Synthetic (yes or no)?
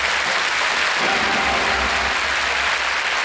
no